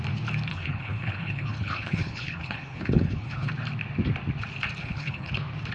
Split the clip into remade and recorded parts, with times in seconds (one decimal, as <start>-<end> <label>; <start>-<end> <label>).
0.0-0.5 recorded; 0.5-3.5 remade; 3.5-4.8 recorded; 4.8-5.3 remade; 5.3-5.7 recorded